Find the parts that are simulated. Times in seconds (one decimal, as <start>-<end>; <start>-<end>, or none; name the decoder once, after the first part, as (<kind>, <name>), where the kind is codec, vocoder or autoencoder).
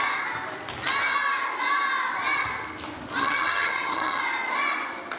3.2-4.2 (vocoder, HiFi-GAN)